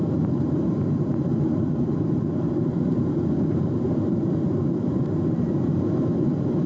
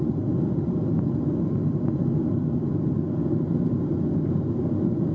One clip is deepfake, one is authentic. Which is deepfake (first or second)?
first